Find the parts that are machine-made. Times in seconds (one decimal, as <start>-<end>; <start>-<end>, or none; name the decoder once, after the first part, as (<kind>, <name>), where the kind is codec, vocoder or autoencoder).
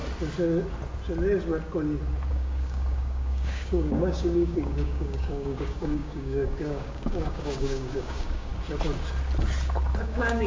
2.3-8.5 (codec, DAC); 10.0-10.5